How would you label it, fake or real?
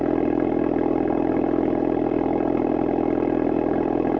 fake